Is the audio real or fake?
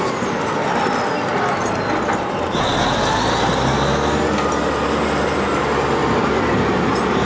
real